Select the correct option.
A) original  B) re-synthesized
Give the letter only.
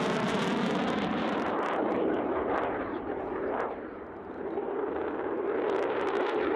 B